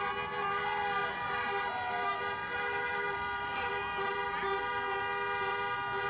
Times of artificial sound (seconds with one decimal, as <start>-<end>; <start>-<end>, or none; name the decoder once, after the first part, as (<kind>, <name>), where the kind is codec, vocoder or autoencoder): 2.4-3.7 (vocoder, BigVGAN v2)